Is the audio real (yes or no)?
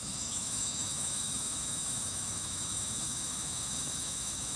no